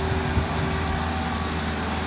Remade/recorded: recorded